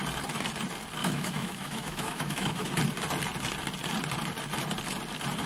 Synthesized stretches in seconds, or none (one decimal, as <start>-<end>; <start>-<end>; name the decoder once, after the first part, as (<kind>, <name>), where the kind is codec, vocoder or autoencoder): 1.0-2.7 (autoencoder, DAC-VAE)